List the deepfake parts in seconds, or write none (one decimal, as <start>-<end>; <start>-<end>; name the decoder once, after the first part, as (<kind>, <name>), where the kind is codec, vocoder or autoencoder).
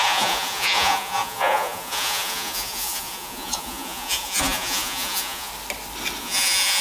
0.0-5.5 (vocoder, Vocos); 6.2-6.8